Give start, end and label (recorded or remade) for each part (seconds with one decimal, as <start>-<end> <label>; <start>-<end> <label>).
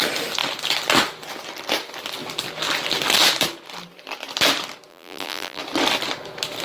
0.0-4.9 recorded; 4.9-5.6 remade; 5.6-6.6 recorded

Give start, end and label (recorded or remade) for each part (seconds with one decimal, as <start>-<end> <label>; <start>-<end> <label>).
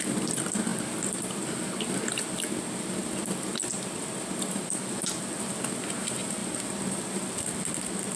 0.0-8.2 recorded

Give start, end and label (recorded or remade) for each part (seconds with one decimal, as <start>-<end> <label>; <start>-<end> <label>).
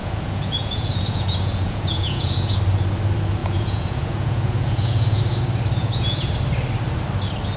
0.0-2.6 remade; 2.6-3.4 recorded; 3.4-5.2 remade; 5.2-5.8 recorded; 5.8-6.3 remade; 6.3-7.6 recorded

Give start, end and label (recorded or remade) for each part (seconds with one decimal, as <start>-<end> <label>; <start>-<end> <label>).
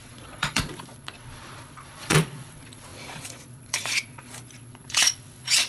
0.0-5.7 remade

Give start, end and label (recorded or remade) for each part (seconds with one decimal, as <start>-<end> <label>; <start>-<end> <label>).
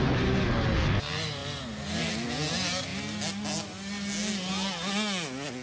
0.0-5.6 recorded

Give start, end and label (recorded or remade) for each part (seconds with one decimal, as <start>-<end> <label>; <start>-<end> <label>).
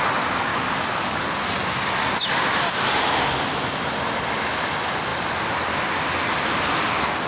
0.0-0.5 recorded; 0.5-1.2 remade; 1.2-7.3 recorded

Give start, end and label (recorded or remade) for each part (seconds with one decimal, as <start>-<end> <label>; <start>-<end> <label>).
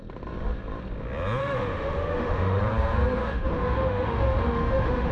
0.0-1.4 recorded; 1.4-2.6 remade; 2.6-3.2 recorded; 3.2-5.1 remade